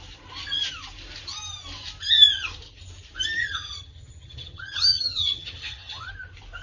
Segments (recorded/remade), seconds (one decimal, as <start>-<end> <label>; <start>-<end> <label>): 0.0-3.4 recorded; 3.4-6.1 remade; 6.1-6.6 recorded